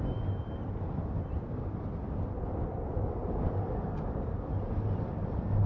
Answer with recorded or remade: recorded